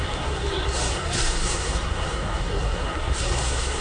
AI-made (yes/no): yes